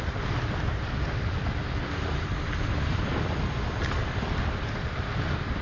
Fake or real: fake